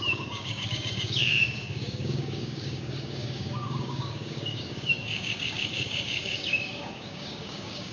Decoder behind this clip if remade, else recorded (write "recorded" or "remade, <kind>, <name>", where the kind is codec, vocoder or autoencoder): remade, codec, DAC